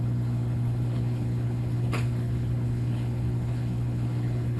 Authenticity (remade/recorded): remade